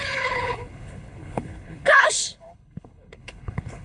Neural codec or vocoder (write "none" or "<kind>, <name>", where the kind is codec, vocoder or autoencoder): codec, HILCodec